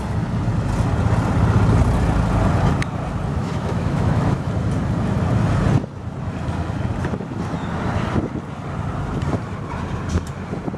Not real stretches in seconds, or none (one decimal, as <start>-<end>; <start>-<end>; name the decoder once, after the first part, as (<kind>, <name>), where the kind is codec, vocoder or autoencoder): 3.3-4.5 (autoencoder, DAC-VAE)